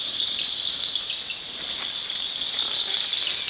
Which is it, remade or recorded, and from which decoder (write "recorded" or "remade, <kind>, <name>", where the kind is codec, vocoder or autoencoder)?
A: recorded